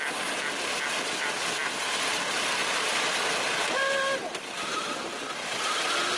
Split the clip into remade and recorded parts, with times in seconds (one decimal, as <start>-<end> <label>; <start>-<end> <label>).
0.0-6.2 recorded